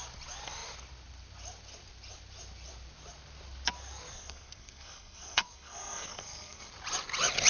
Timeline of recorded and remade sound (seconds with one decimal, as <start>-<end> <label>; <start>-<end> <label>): 0.0-4.1 recorded; 4.1-6.7 remade; 6.7-7.5 recorded